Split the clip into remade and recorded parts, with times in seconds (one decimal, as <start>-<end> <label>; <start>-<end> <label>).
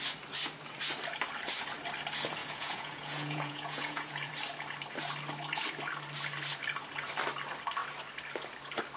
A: 0.0-2.4 recorded; 2.4-4.3 remade; 4.3-9.0 recorded